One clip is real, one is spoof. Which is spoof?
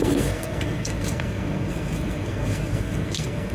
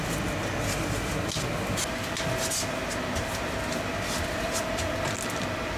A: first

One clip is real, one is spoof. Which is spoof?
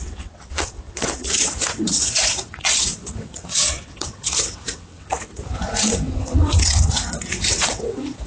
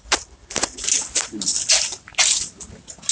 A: first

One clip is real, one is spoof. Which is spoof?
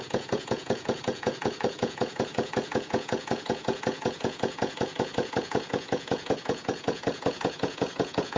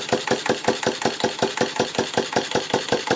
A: first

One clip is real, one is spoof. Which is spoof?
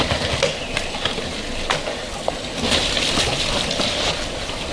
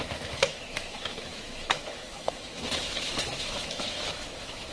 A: second